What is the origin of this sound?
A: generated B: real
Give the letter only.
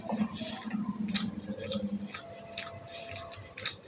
B